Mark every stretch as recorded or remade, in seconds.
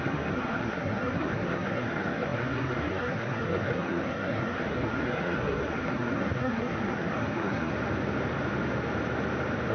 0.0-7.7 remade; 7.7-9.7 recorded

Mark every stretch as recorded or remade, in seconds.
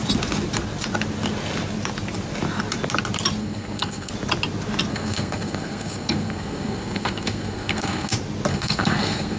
0.0-3.4 recorded; 3.4-4.1 remade; 4.1-4.9 recorded; 4.9-8.1 remade; 8.1-8.5 recorded; 8.5-9.4 remade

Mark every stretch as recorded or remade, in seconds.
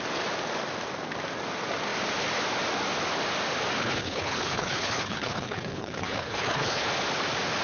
0.0-3.8 recorded; 3.8-6.9 remade; 6.9-7.6 recorded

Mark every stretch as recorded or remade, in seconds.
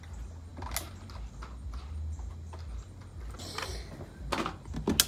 0.0-5.1 recorded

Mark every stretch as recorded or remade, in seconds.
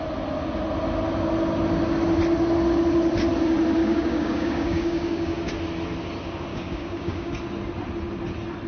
0.0-3.8 recorded; 3.8-5.5 remade; 5.5-6.5 recorded; 6.5-7.3 remade; 7.3-8.7 recorded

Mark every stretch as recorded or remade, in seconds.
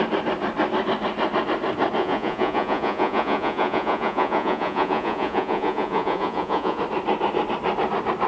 0.0-2.0 recorded; 2.0-6.8 remade; 6.8-8.3 recorded